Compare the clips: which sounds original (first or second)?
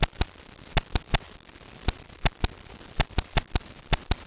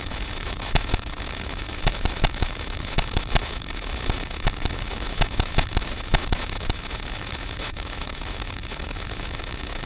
first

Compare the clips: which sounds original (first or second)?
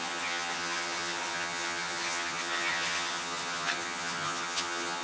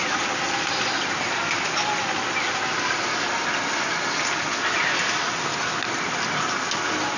second